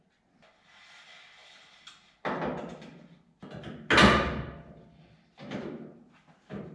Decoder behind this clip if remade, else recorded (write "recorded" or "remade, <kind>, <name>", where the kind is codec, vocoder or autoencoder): recorded